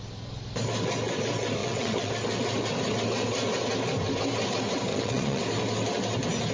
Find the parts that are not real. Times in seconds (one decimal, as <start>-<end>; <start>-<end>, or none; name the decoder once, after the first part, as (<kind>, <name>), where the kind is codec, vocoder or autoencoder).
1.6-2.1 (vocoder, WaveNeXt); 4.9-5.4

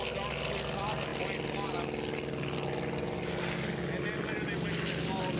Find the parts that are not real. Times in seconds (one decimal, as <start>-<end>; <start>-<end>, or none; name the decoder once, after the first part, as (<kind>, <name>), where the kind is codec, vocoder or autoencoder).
none

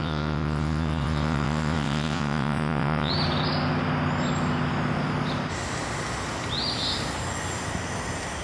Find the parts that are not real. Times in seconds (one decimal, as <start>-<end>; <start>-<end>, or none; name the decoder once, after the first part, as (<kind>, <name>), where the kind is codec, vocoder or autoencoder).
0.0-3.1 (vocoder, WaveNeXt)

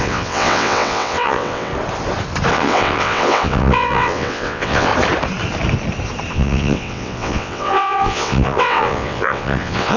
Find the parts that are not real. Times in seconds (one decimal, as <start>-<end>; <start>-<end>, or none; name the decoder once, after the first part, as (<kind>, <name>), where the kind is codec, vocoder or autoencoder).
0.0-1.7 (vocoder, WaveNeXt); 2.5-4.9; 6.3-10.0

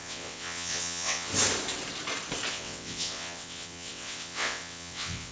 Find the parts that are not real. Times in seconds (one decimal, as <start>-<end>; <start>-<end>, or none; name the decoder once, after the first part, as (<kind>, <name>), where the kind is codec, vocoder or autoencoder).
0.0-1.3 (vocoder, WaveNeXt); 2.5-5.3

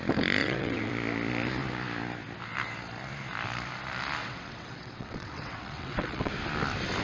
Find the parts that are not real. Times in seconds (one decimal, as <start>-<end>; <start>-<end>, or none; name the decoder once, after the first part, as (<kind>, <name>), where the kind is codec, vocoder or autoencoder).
0.4-0.9 (vocoder, WaveNeXt); 4.2-6.3

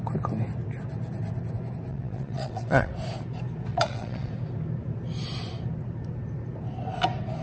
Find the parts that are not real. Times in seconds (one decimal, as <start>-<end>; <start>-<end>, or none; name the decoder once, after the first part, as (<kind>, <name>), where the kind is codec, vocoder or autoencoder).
1.9-2.9 (vocoder, WaveNeXt); 3.7-4.3

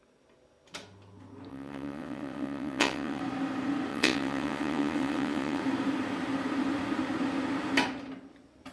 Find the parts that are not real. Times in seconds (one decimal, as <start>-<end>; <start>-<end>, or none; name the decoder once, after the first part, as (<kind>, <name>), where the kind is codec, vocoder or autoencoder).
1.5-3.2 (vocoder, WaveNeXt); 3.9-5.6